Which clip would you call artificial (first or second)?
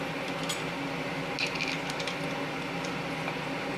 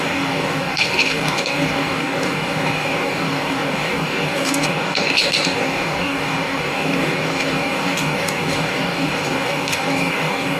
second